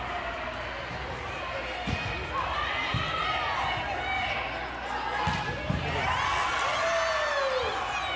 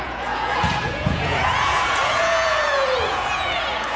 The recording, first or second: first